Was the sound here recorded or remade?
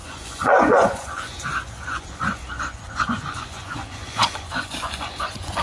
remade